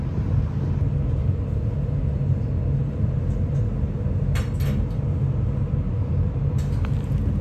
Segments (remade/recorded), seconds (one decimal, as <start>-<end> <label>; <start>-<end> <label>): 0.0-7.4 recorded